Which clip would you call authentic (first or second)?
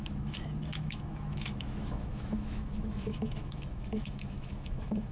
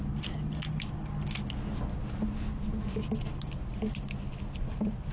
second